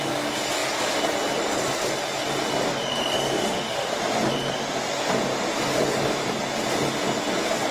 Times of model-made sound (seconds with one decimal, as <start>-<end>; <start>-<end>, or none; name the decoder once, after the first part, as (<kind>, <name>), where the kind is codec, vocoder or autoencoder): 3.4-4.0 (autoencoder, DAC-VAE)